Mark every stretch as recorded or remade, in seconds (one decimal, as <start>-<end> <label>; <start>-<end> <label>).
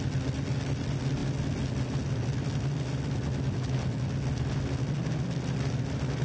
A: 0.0-6.2 recorded